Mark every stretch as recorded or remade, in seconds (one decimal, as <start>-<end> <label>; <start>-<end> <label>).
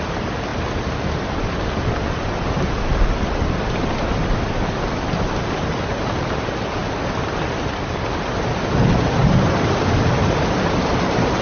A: 0.0-11.4 recorded